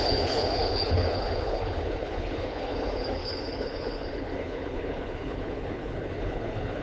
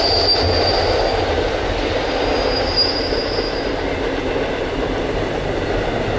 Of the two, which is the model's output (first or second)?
first